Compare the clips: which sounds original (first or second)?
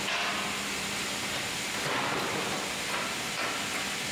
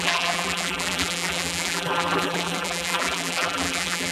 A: first